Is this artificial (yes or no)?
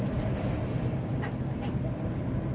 no